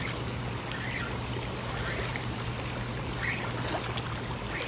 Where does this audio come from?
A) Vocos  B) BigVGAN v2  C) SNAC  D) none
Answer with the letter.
D